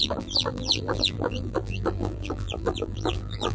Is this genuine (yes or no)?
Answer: no